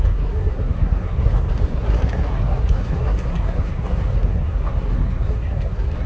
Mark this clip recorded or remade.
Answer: remade